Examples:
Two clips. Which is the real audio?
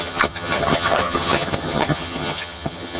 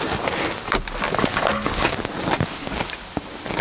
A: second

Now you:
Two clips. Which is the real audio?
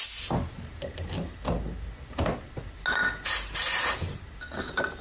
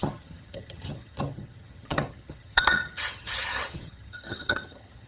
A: first